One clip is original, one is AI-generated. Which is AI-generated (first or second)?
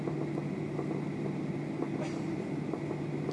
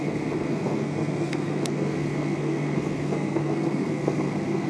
second